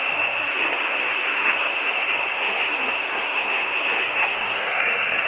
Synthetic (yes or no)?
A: yes